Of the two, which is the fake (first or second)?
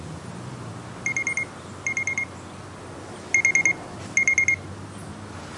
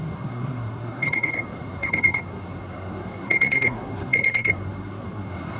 second